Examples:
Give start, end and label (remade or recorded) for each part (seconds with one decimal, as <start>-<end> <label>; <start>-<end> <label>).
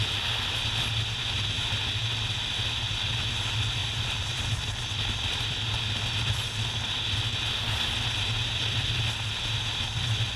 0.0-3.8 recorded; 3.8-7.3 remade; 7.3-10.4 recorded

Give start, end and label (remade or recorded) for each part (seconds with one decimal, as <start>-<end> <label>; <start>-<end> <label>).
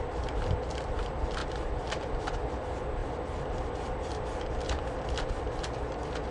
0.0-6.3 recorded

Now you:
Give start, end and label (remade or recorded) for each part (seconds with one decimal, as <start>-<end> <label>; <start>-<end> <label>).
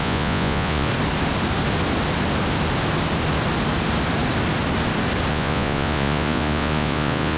0.0-0.9 remade; 0.9-5.3 recorded; 5.3-7.4 remade